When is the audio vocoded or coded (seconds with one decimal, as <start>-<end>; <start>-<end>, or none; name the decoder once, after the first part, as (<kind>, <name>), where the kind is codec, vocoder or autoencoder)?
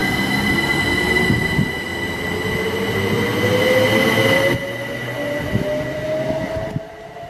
none